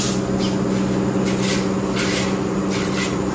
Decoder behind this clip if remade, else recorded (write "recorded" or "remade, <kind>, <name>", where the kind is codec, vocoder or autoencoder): recorded